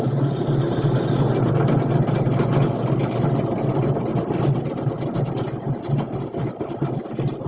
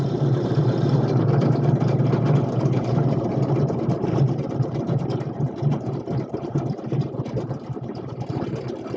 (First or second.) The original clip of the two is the first